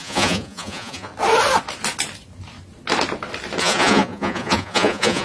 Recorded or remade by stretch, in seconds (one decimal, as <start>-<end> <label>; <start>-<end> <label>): 0.0-1.1 remade; 1.1-3.6 recorded; 3.6-5.2 remade